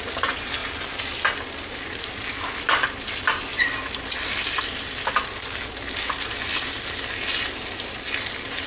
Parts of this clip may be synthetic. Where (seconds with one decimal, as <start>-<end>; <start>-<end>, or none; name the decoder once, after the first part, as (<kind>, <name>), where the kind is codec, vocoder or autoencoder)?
none